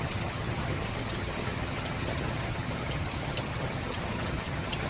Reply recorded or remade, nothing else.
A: remade